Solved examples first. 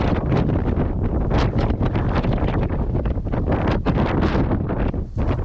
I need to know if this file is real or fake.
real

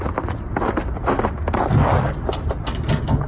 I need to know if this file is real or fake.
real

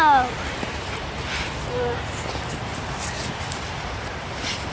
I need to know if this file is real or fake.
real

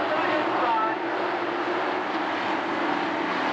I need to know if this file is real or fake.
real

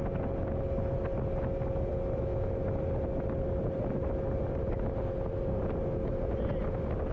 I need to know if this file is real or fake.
real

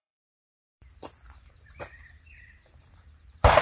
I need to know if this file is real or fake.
fake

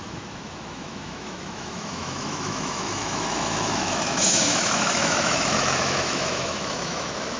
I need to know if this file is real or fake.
fake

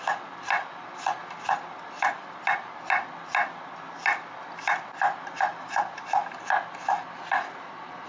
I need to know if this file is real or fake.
real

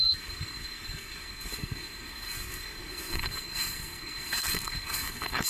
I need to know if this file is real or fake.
fake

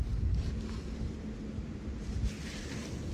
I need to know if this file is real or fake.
real